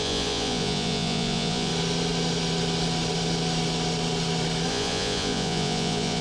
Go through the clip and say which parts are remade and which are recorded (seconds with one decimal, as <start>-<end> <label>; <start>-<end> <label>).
0.0-1.7 remade; 1.7-4.7 recorded; 4.7-6.2 remade